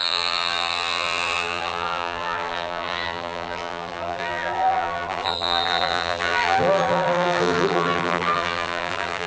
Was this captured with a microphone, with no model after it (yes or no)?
no